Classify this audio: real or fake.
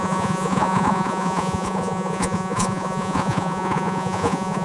fake